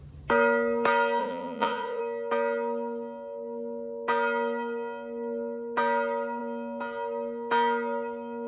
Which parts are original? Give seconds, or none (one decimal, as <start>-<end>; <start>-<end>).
0.0-1.2; 2.0-8.5